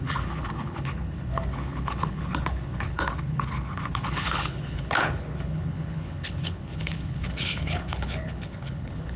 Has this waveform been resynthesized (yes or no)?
yes